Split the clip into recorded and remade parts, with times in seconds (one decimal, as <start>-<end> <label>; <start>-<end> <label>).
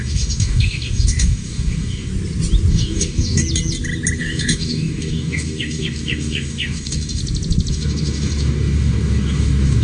0.0-2.1 remade; 2.1-2.7 recorded; 2.7-3.4 remade; 3.4-4.2 recorded; 4.2-7.2 remade; 7.2-7.7 recorded; 7.7-9.8 remade